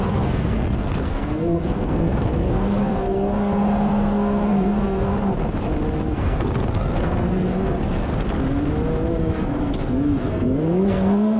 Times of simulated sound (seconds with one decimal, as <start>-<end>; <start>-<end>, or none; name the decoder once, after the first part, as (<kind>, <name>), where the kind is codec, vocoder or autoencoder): 0.0-5.1 (codec, SNAC); 6.0-8.1; 9.1-11.4